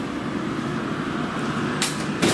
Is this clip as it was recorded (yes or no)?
yes